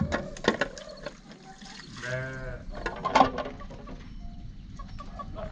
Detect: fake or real real